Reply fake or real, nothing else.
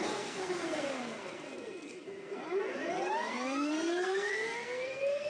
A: fake